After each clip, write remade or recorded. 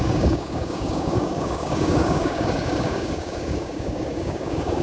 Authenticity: remade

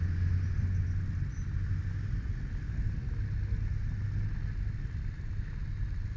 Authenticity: recorded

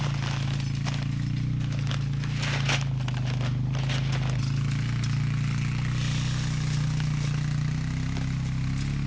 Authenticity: recorded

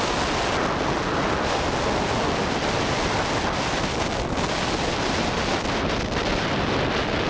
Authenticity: recorded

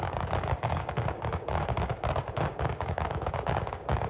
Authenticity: remade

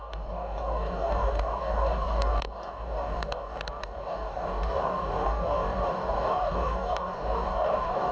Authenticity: remade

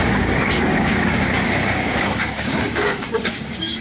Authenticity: remade